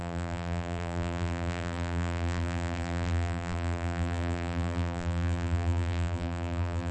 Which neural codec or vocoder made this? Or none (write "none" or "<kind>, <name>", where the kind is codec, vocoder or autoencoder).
vocoder, BigVGAN v2